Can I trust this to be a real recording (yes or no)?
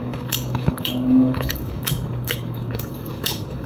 no